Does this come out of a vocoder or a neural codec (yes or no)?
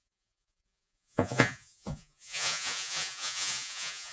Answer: yes